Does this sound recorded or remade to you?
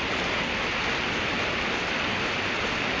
recorded